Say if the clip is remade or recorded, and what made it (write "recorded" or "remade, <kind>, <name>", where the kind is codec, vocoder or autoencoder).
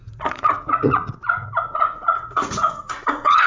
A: remade, vocoder, Vocos